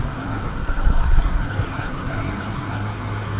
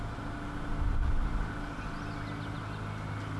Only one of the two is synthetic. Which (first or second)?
first